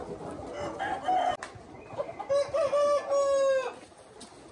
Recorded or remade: recorded